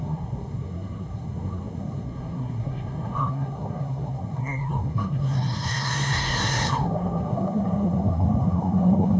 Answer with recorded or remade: remade